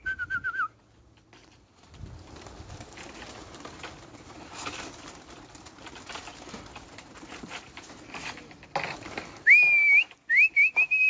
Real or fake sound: real